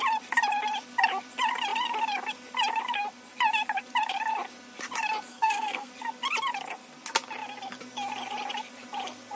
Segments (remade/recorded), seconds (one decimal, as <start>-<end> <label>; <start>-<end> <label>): 0.0-5.3 recorded; 5.3-5.9 remade; 5.9-9.4 recorded